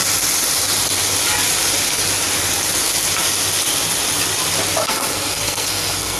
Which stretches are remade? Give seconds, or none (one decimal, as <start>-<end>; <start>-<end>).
4.8-6.2